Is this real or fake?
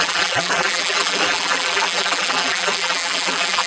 fake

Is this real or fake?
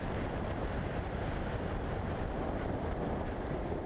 fake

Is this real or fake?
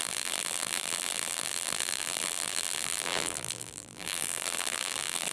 fake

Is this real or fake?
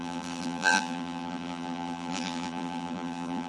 fake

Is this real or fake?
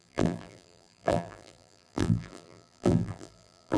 fake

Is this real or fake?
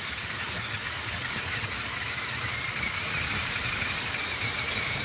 fake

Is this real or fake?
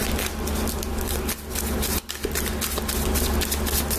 real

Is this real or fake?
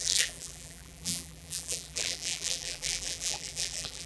fake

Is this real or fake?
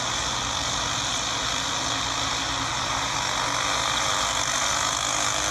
real